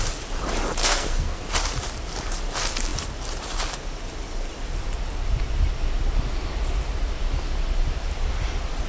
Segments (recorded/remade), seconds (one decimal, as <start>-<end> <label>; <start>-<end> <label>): 0.0-0.8 recorded; 0.8-1.4 remade; 1.4-8.9 recorded